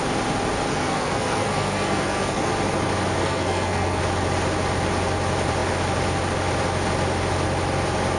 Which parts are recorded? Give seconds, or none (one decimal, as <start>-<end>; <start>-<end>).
0.0-0.7; 2.5-3.2; 4.0-8.2